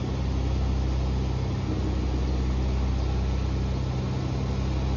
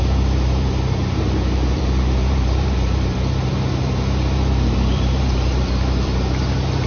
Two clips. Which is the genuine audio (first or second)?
first